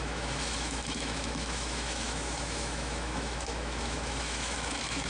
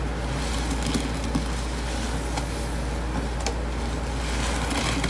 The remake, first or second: first